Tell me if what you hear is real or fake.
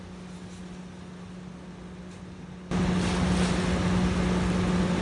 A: real